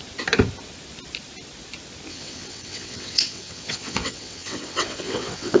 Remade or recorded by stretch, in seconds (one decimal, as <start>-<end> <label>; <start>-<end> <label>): 0.0-2.1 recorded; 2.1-5.6 remade